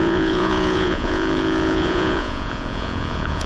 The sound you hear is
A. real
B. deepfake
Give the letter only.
B